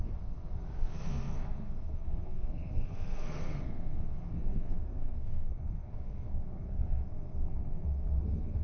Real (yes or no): no